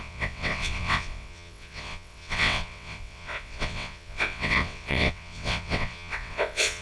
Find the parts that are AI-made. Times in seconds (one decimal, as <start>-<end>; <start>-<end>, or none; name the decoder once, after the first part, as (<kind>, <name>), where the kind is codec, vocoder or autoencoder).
0.0-6.8 (vocoder, WaveNeXt)

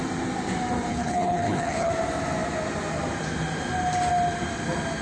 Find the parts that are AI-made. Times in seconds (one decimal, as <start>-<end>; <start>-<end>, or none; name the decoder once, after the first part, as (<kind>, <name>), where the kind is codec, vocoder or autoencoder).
0.9-1.9 (codec, HILCodec)

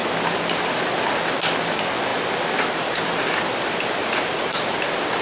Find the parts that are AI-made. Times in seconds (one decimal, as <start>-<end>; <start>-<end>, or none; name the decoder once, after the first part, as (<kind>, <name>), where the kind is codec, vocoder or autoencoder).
4.0-4.6 (vocoder, Vocos)

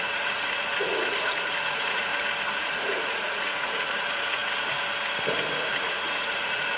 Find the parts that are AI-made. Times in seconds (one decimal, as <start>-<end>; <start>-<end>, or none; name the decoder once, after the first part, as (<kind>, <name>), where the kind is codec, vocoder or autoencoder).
0.0-2.1 (vocoder, Vocos); 2.6-4.4; 5.6-6.8

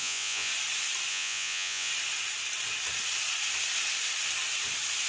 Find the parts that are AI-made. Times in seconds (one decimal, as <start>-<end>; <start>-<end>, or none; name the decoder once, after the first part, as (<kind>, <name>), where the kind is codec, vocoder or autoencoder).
0.0-0.5 (vocoder, Vocos); 1.1-1.9

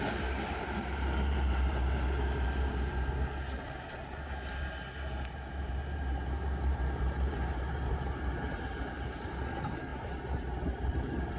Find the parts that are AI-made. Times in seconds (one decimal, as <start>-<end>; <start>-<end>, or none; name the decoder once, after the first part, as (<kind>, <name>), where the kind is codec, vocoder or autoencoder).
0.0-11.4 (vocoder, BigVGAN v2)